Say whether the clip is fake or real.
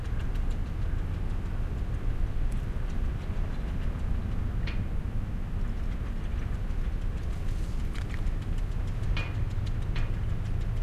real